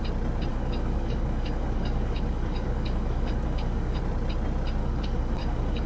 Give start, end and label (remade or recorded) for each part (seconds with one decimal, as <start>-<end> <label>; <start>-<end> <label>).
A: 0.0-0.5 recorded; 0.5-4.0 remade; 4.0-4.8 recorded; 4.8-5.9 remade